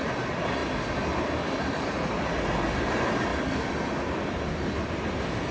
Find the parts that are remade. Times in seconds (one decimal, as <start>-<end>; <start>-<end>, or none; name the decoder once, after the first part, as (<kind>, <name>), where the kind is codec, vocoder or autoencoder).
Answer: 0.6-2.4 (vocoder, BigVGAN v2); 3.3-4.0

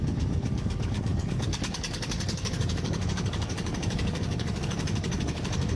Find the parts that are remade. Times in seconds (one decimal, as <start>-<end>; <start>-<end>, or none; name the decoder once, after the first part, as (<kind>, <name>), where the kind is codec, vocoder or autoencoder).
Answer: 0.0-5.8 (codec, DAC)